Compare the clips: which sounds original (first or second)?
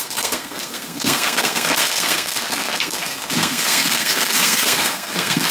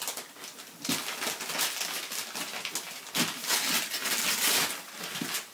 second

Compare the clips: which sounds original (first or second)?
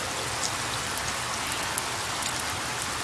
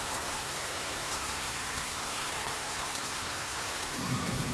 first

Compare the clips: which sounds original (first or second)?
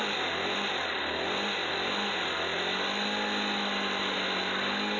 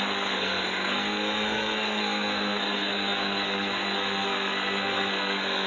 first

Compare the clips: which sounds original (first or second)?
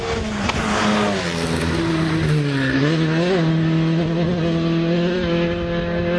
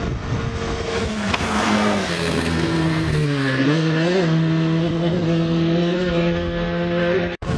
first